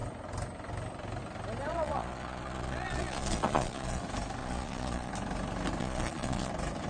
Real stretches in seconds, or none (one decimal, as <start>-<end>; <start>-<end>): 0.0-1.7; 4.0-4.4; 5.1-5.8; 6.5-6.9